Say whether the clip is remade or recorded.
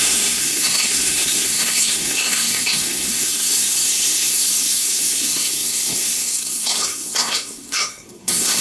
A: remade